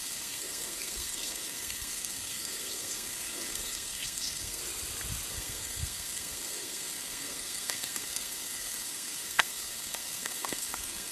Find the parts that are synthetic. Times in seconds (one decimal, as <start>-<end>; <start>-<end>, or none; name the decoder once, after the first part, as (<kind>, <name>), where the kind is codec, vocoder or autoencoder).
0.0-4.6 (codec, SNAC); 5.3-11.1

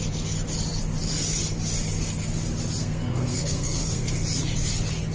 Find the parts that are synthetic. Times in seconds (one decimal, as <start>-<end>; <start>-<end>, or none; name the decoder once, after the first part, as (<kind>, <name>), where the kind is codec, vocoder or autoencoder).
2.8-4.1 (codec, SNAC)

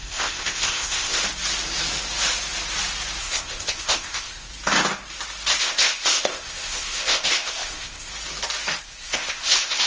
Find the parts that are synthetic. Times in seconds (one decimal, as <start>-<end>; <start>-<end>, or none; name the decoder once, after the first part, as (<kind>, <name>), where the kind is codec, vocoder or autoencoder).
0.0-1.2 (codec, ZipCodec); 3.2-4.5; 5.6-8.1; 8.8-9.9

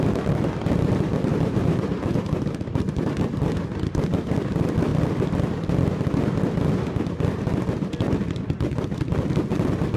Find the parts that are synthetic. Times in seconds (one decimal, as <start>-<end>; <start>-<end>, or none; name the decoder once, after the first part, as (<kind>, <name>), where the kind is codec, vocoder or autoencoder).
1.3-3.3 (vocoder, BigVGAN v2)

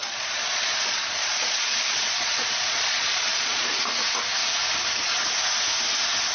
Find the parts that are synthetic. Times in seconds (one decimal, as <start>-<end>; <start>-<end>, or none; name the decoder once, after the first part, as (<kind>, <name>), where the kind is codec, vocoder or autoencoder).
0.0-3.8 (vocoder, Vocos)

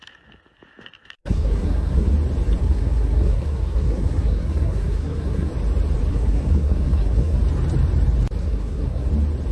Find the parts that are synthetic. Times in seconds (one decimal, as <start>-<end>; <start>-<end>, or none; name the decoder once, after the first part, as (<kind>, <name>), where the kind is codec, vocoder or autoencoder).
1.2-2.1 (codec, SNAC); 2.6-5.5; 6.1-7.4; 8.4-9.1

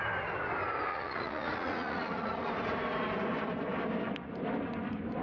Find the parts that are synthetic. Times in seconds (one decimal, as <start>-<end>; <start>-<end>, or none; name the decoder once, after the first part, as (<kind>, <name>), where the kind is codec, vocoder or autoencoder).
0.9-2.5 (vocoder, Vocos)

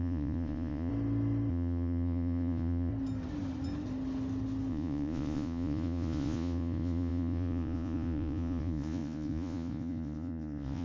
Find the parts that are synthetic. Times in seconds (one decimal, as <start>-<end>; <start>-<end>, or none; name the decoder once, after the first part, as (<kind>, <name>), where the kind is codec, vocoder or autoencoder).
0.0-0.9 (vocoder, Vocos); 1.5-2.9; 4.7-10.8